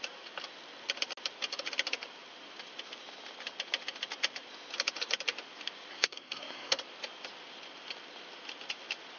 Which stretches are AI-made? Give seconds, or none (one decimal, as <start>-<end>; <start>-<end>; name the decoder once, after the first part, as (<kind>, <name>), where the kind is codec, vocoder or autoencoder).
5.9-6.8 (codec, SNAC)